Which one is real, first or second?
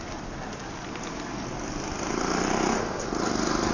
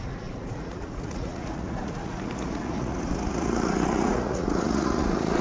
first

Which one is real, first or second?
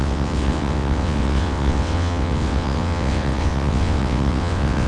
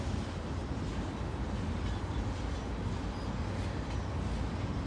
second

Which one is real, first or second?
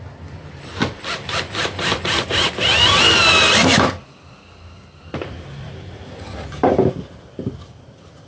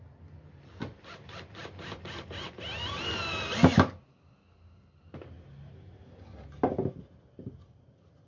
second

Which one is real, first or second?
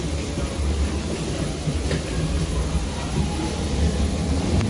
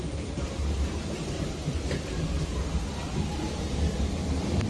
first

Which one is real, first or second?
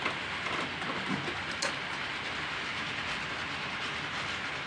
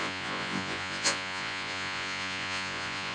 first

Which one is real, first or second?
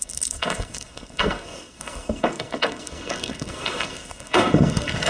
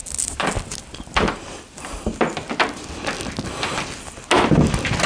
second